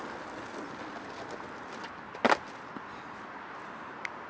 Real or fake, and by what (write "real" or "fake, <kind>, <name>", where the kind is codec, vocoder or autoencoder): real